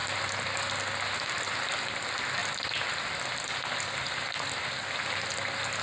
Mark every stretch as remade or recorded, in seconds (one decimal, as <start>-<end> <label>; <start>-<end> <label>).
0.0-5.8 recorded